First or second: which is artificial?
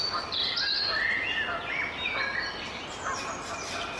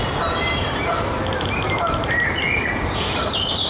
second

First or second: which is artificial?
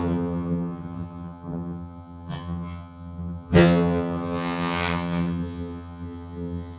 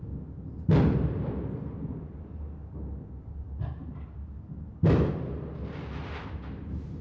first